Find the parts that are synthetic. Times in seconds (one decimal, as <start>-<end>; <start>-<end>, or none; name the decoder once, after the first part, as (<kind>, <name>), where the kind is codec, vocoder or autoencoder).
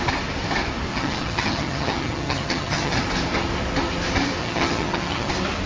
0.9-3.0 (vocoder, HiFi-GAN); 4.4-5.3